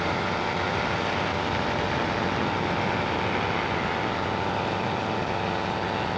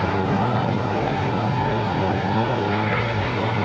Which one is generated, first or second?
second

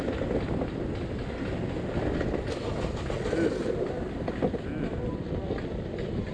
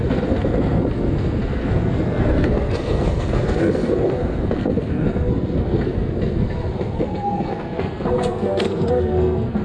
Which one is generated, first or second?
second